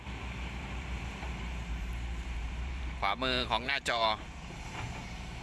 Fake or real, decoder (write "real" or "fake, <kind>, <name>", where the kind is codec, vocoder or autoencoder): fake, vocoder, BigVGAN v2